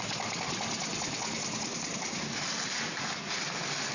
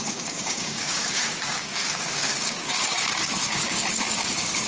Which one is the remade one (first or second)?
second